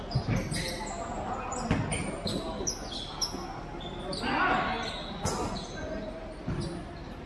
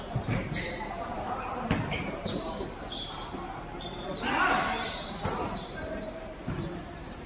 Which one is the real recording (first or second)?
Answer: first